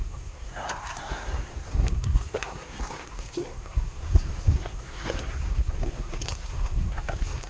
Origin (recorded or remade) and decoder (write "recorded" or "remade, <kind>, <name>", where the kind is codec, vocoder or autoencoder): remade, codec, SNAC